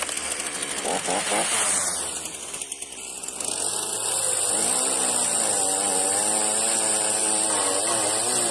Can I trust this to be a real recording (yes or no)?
yes